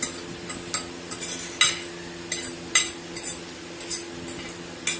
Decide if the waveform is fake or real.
real